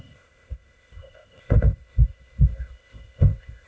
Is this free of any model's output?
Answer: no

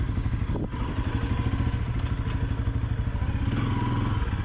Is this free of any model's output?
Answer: yes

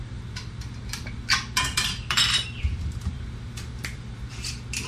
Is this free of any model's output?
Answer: no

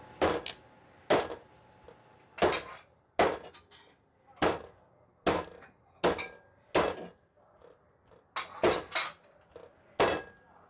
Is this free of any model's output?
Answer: yes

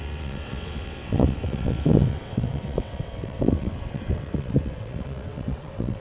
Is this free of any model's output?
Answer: no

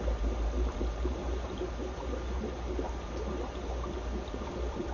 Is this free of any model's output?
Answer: no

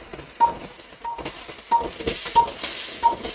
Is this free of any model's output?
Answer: yes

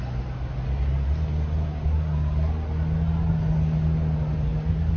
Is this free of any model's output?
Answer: yes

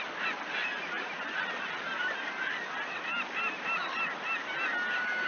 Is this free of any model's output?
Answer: yes